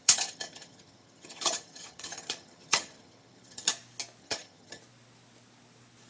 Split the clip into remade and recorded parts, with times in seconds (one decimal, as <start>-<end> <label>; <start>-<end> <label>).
0.0-3.7 remade; 3.7-4.2 recorded; 4.2-4.8 remade; 4.8-6.1 recorded